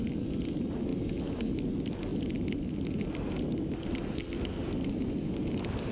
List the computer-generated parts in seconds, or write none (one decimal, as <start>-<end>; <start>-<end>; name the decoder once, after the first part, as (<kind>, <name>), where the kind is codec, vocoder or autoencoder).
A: none